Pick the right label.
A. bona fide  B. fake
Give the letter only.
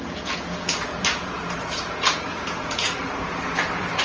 B